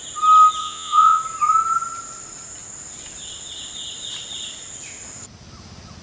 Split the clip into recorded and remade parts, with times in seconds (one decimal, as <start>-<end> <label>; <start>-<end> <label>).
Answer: 0.0-0.6 recorded; 0.6-1.2 remade; 1.2-6.0 recorded